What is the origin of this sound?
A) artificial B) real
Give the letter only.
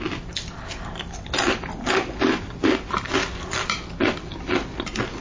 B